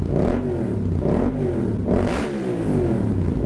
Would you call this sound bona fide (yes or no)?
yes